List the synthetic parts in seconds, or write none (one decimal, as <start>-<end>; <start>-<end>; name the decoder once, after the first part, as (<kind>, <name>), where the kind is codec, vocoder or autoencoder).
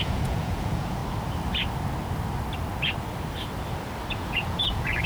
0.0-1.0 (vocoder, Vocos); 4.1-5.1